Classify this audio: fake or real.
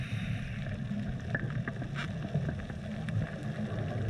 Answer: real